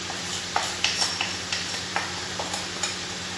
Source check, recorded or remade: remade